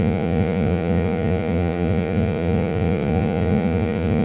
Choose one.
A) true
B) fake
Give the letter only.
B